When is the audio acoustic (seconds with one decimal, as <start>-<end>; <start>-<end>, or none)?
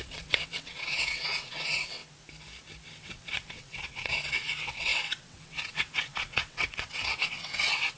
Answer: 2.0-3.0